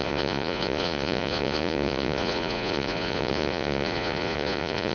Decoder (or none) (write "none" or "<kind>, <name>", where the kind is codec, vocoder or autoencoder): vocoder, Vocos